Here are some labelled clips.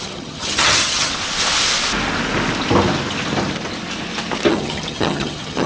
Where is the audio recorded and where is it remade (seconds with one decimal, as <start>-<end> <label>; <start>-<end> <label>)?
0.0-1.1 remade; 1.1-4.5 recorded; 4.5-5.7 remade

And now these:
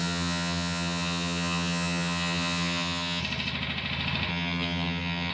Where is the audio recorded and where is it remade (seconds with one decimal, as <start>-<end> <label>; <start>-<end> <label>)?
0.0-3.2 remade; 3.2-4.3 recorded; 4.3-5.3 remade

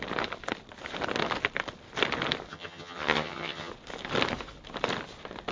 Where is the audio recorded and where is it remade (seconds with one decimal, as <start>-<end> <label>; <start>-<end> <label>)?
0.0-2.5 recorded; 2.5-3.7 remade; 3.7-5.5 recorded